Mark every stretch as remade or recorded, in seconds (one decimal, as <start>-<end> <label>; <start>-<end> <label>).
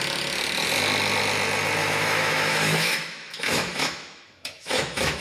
0.0-1.8 recorded; 1.8-5.2 remade